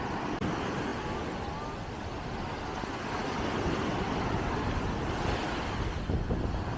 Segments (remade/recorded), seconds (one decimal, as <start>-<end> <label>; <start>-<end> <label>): 0.0-6.8 recorded